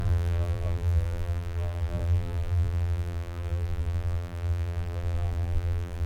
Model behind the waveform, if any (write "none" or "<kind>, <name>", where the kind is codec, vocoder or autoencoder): vocoder, BigVGAN v2